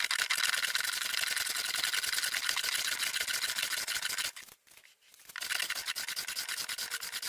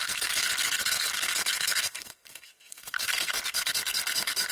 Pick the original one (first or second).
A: first